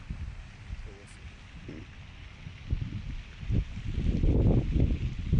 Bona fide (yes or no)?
yes